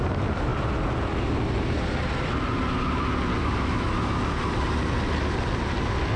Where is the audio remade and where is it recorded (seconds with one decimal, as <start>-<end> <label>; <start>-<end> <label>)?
0.0-3.4 recorded; 3.4-4.2 remade; 4.2-6.2 recorded